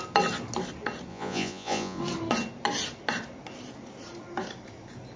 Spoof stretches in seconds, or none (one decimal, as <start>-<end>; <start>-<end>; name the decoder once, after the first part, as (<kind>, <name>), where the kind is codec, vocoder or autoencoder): 1.1-2.0 (vocoder, Vocos)

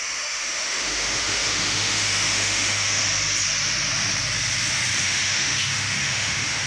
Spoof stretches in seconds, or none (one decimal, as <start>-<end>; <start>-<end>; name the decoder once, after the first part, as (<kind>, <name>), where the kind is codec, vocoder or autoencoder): 0.0-3.0 (autoencoder, DAC-VAE); 5.0-6.7

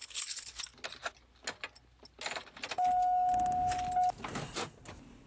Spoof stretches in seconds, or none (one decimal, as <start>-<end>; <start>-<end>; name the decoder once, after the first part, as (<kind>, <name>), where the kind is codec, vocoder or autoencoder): 0.0-0.6 (codec, HILCodec)

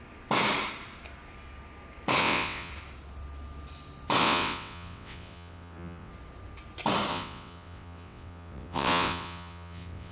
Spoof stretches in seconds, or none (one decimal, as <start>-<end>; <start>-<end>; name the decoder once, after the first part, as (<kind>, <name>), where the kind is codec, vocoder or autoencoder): 2.2-2.7 (vocoder, WaveNeXt); 4.2-6.1; 7.1-10.1

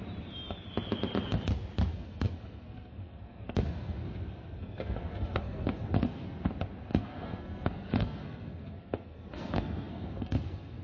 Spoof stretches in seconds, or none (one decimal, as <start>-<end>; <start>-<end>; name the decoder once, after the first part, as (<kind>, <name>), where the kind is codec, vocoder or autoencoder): 1.9-6.5 (codec, SNAC); 6.9-10.8

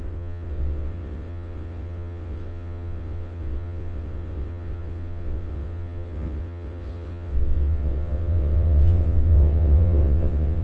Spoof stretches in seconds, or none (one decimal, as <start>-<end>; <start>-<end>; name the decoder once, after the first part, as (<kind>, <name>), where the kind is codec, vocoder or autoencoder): 0.0-10.6 (vocoder, WaveNeXt)

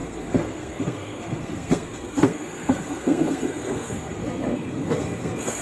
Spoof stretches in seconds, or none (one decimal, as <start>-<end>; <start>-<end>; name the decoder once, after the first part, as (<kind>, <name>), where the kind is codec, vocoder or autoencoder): 0.0-5.6 (codec, SNAC)